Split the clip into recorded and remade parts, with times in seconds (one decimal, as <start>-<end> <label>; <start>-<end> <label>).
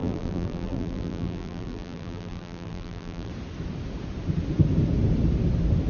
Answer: 0.0-3.3 remade; 3.3-5.9 recorded